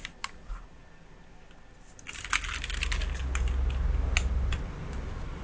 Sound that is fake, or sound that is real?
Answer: real